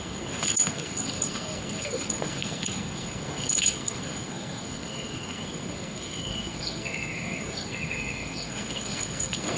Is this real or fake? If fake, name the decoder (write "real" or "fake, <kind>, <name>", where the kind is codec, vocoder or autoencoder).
fake, codec, SNAC